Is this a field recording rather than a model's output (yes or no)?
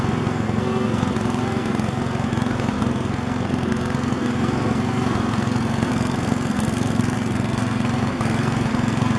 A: no